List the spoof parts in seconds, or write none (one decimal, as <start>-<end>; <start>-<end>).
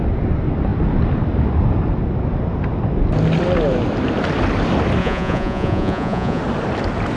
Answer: 5.0-6.4